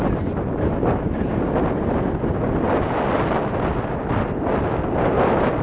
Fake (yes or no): no